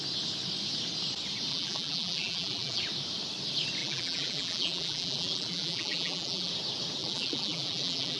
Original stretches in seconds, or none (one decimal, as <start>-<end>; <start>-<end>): 0.0-1.5; 2.8-3.8; 6.5-7.0